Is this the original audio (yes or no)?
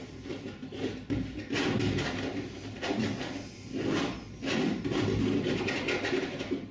yes